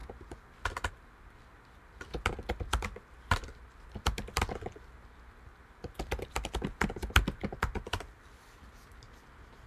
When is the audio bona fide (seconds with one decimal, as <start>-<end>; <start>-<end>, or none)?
0.0-9.7